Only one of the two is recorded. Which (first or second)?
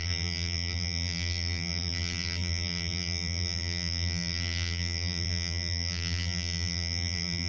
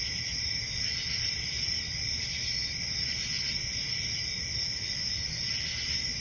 second